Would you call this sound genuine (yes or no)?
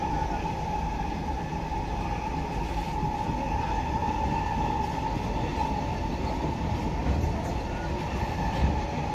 yes